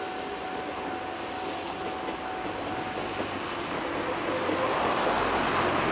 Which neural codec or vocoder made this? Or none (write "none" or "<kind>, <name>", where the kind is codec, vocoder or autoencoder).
none